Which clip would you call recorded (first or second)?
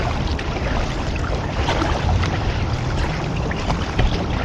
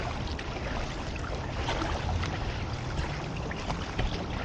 second